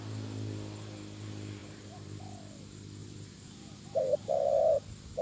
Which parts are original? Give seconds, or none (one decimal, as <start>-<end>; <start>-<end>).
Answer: 0.0-1.6; 2.2-3.0; 4.7-5.2